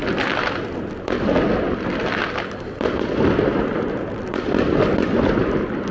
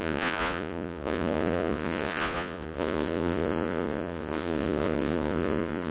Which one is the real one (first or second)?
first